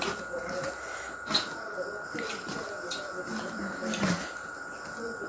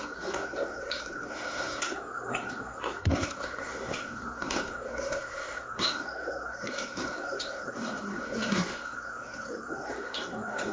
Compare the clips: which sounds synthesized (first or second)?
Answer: second